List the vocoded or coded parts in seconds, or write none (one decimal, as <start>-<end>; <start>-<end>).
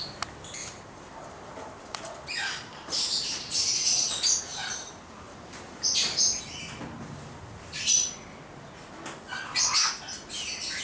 0.6-3.7; 4.5-6.4